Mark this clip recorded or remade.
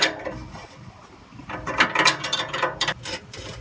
remade